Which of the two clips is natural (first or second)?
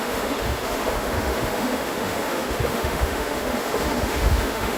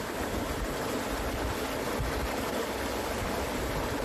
second